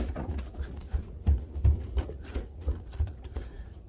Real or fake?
fake